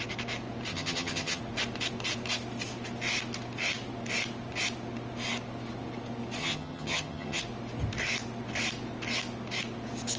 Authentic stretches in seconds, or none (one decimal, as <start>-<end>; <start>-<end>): 0.0-0.7; 1.4-6.4; 7.4-10.2